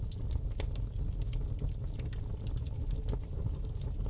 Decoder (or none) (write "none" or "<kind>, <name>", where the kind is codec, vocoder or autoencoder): none